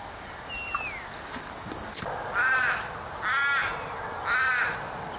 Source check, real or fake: real